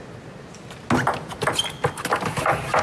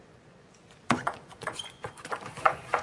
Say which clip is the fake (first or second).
second